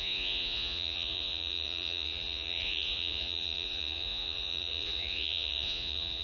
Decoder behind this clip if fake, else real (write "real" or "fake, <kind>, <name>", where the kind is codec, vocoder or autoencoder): fake, vocoder, Vocos